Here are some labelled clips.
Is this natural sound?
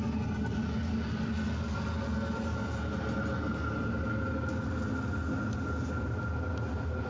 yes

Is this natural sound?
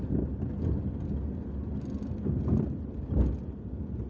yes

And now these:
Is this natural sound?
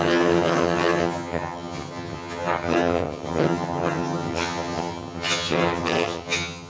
no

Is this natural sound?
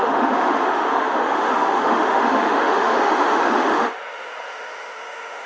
no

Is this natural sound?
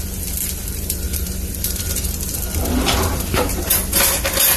no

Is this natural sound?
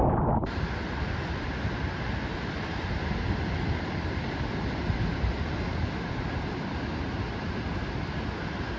yes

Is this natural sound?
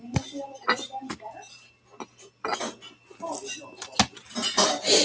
yes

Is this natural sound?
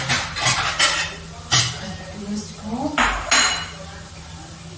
yes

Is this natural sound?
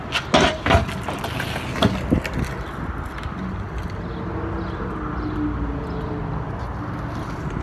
yes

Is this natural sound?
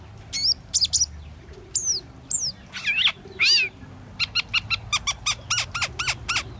yes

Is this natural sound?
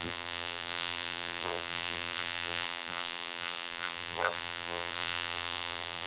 no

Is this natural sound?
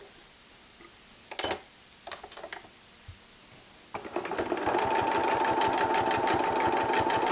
yes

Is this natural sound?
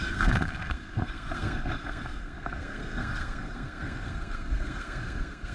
no